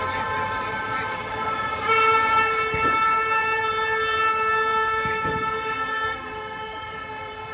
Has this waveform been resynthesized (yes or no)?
yes